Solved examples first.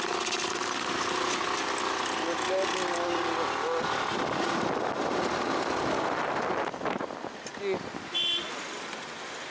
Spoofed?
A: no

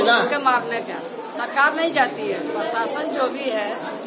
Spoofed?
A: no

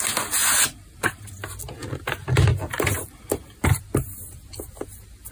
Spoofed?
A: yes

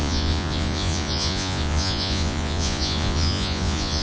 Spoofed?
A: yes